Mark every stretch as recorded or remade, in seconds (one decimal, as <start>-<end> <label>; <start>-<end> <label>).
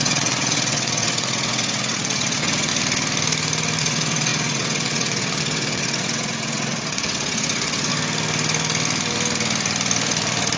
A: 0.0-2.7 remade; 2.7-3.8 recorded; 3.8-7.9 remade; 7.9-10.6 recorded